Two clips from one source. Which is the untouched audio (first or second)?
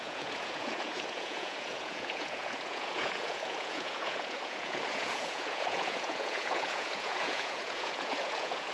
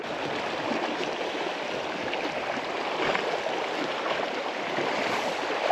second